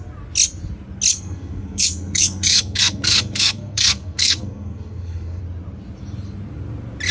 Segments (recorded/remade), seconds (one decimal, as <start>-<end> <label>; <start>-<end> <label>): 0.0-1.1 recorded; 1.1-5.4 remade; 5.4-7.1 recorded

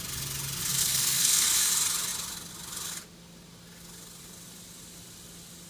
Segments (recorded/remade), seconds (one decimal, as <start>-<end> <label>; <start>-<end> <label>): 0.0-0.8 recorded; 0.8-1.7 remade; 1.7-5.7 recorded

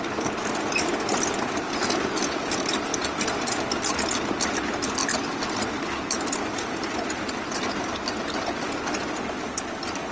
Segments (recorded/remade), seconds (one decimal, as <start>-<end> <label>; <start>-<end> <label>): 0.0-10.1 recorded

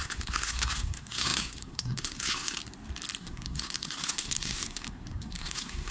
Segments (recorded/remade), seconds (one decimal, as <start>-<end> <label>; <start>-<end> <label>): 0.0-2.6 remade; 2.6-3.2 recorded; 3.2-5.9 remade

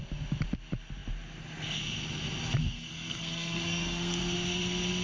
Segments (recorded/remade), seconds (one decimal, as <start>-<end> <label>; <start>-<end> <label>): 0.0-2.6 recorded; 2.6-4.2 remade; 4.2-5.0 recorded

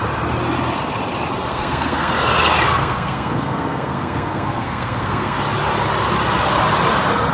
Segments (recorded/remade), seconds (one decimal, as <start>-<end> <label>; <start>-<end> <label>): 0.0-1.5 recorded; 1.5-2.1 remade; 2.1-2.8 recorded; 2.8-5.4 remade; 5.4-7.3 recorded